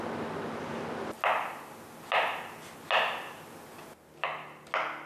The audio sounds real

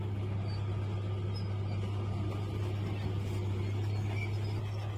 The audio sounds real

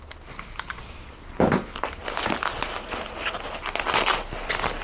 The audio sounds real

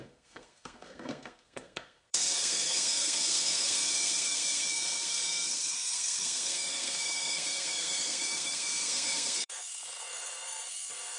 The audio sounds fake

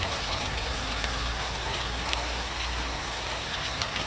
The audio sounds fake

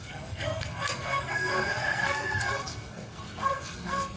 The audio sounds fake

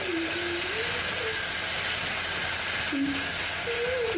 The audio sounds real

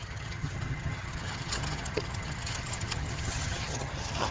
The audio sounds fake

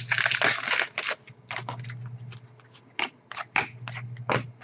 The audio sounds real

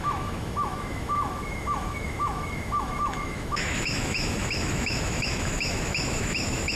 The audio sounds fake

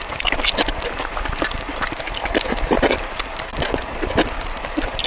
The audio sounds real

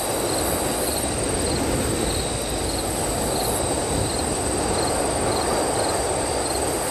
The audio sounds real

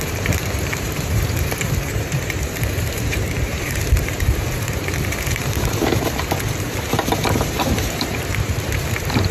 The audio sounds fake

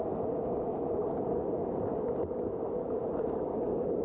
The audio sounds real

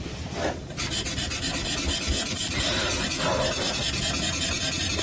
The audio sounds real